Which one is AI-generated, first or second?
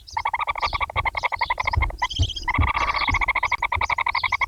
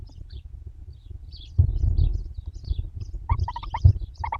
second